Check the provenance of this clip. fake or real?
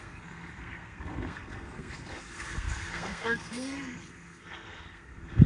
fake